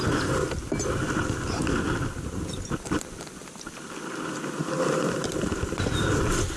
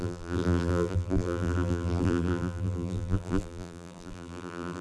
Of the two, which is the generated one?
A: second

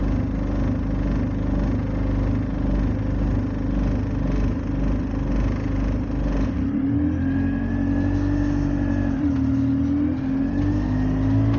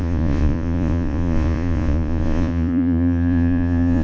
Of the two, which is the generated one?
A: second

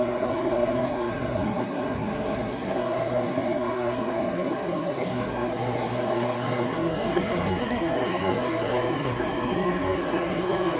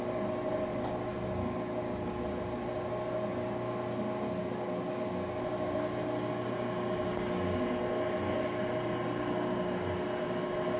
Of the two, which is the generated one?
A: first